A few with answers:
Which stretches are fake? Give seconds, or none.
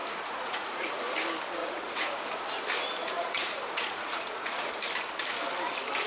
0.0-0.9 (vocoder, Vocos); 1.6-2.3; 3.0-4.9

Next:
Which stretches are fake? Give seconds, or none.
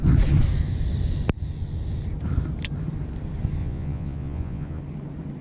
3.6-4.8 (vocoder, Vocos)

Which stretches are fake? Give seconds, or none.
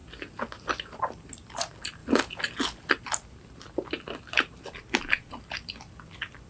none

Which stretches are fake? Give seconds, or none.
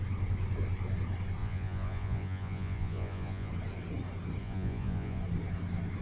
1.4-3.5 (vocoder, Vocos); 4.4-5.2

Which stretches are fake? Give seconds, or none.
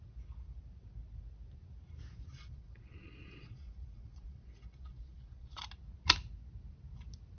2.3-5.6 (vocoder, Vocos)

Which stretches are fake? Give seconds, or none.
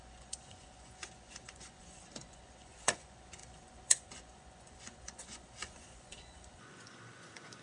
0.0-7.6 (vocoder, Vocos)